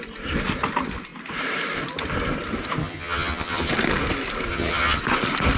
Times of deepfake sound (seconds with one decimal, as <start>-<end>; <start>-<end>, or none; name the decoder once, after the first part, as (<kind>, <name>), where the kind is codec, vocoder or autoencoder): 2.8-3.7 (vocoder, HiFi-GAN); 4.5-5.0

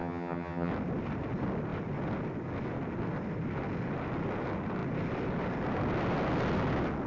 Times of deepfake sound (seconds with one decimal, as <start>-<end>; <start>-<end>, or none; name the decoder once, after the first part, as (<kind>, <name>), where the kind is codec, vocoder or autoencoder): 0.0-0.7 (vocoder, HiFi-GAN)

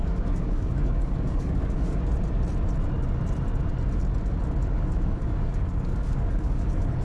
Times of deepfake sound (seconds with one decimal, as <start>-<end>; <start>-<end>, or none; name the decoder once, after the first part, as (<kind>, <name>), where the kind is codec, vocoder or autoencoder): 0.0-2.1 (codec, DAC); 4.7-7.0

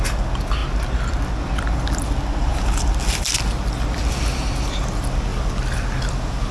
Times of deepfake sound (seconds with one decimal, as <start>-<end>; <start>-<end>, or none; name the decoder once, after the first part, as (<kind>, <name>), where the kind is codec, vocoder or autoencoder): none

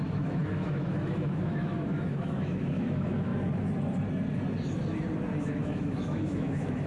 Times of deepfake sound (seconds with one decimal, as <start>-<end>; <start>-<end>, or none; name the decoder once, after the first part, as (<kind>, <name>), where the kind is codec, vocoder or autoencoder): 0.0-3.3 (autoencoder, DAC-VAE); 5.4-6.9

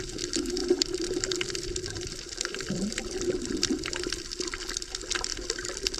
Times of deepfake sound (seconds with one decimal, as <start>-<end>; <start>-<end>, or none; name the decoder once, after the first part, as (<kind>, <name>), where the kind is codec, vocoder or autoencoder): 0.6-4.1 (vocoder, BigVGAN v2); 5.3-6.0

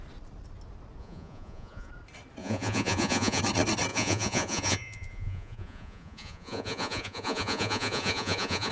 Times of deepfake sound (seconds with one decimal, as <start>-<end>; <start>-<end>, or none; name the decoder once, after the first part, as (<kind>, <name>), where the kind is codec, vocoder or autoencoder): 1.0-1.9 (vocoder, Vocos); 2.4-3.4; 3.9-8.7

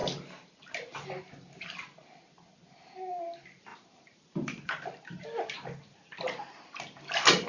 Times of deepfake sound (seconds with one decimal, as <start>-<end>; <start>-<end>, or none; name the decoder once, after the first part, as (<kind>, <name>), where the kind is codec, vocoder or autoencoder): 3.7-7.0 (vocoder, BigVGAN v2)